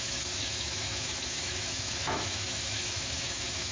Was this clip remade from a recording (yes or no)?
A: yes